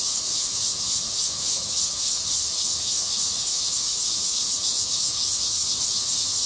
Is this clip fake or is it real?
fake